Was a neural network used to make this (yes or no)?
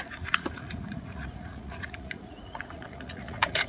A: yes